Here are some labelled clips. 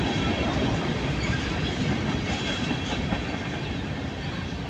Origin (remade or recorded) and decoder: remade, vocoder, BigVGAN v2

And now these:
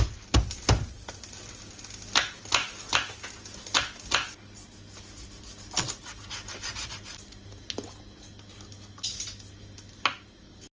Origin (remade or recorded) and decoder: recorded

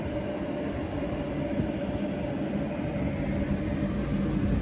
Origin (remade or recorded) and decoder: recorded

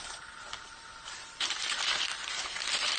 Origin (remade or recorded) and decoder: remade, vocoder, BigVGAN v2